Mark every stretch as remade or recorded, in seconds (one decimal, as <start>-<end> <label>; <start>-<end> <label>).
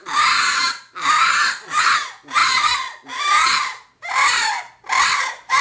0.0-5.6 recorded